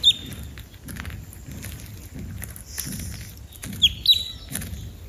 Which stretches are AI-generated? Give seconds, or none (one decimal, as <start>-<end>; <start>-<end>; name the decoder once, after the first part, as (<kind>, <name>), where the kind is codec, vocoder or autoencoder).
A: none